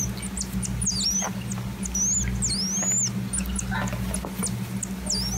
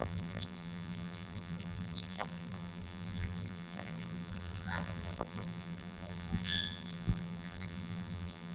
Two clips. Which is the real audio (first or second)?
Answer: first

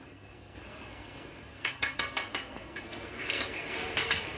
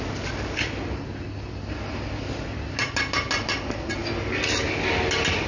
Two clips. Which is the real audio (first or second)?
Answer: second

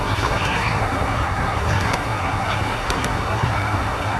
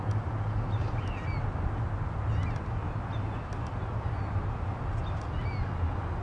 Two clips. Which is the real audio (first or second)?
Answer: second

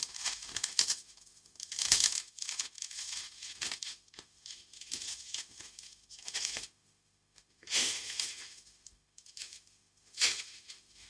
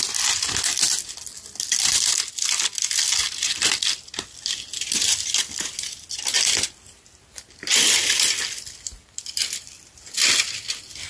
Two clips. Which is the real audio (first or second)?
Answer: second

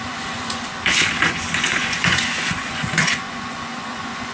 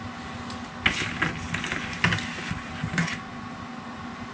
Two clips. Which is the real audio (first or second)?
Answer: second